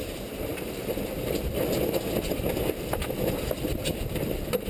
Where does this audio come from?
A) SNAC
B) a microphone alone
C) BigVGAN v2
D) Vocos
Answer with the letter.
B